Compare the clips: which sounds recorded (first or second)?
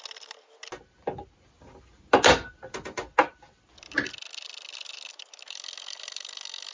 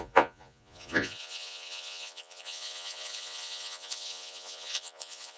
first